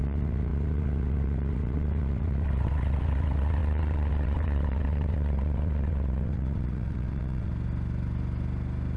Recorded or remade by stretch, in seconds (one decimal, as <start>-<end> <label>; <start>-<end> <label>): 0.0-7.5 remade; 7.5-9.0 recorded